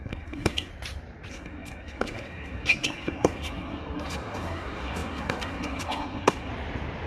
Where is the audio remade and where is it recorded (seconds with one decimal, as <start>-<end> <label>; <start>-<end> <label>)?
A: 0.0-0.7 remade; 0.7-1.3 recorded; 1.3-6.5 remade; 6.5-7.1 recorded